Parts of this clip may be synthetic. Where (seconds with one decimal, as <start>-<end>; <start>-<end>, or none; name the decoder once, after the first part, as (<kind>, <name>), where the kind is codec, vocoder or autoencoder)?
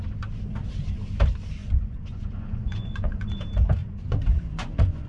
1.6-3.4 (vocoder, Vocos); 3.8-5.1